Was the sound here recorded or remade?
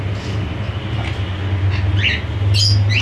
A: recorded